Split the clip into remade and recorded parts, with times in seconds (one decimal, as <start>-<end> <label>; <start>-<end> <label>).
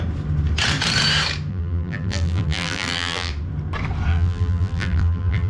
0.0-1.5 recorded; 1.5-3.3 remade; 3.3-4.1 recorded; 4.1-5.5 remade